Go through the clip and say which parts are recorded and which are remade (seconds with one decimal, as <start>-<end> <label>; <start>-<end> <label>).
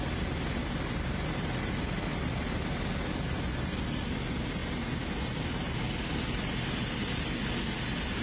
0.0-8.2 recorded